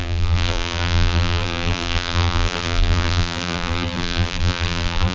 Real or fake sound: fake